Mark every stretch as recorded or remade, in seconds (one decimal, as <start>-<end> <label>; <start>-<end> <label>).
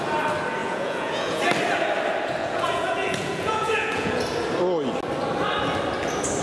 0.0-0.6 recorded; 0.6-1.4 remade; 1.4-2.4 recorded; 2.4-4.2 remade; 4.2-6.4 recorded